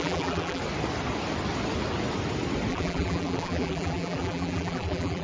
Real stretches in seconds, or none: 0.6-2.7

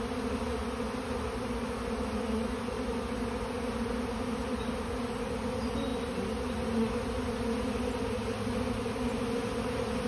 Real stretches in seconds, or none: 0.0-10.1

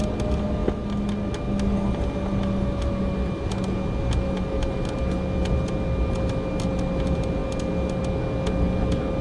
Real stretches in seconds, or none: 0.0-9.2